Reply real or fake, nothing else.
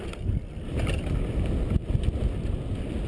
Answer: real